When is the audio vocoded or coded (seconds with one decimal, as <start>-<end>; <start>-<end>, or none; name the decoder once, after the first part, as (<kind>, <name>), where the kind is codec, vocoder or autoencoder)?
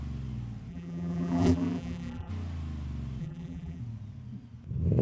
0.7-2.3 (vocoder, BigVGAN v2); 3.2-3.8